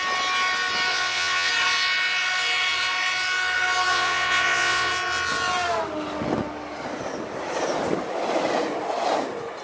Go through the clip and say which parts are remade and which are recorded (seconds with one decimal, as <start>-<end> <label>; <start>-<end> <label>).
0.0-0.9 recorded; 0.9-1.5 remade; 1.5-3.9 recorded; 3.9-4.9 remade; 4.9-9.6 recorded